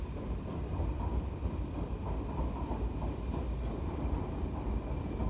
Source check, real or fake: fake